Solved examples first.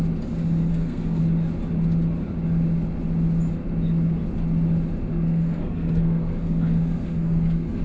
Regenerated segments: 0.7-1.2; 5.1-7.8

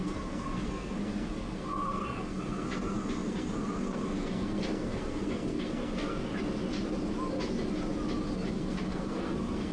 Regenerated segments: 0.0-6.3; 8.5-9.7

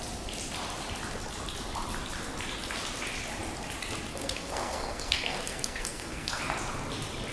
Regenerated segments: 4.1-6.4